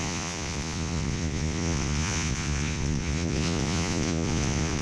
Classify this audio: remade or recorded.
remade